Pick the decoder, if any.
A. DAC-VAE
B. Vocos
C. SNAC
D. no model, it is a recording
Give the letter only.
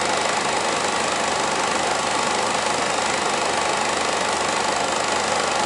D